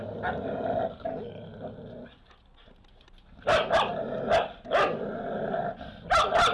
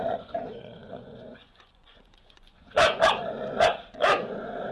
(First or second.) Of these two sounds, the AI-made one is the second